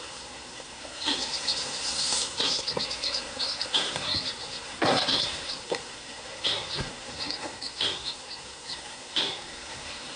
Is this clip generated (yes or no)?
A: yes